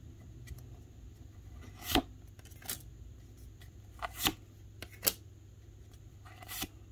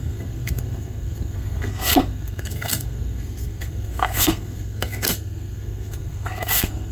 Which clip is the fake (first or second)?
second